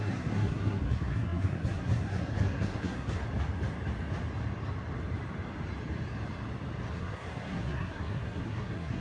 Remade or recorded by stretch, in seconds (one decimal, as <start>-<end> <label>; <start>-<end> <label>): 0.0-3.2 remade; 3.2-6.9 recorded; 6.9-9.0 remade